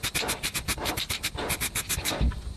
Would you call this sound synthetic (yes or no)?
no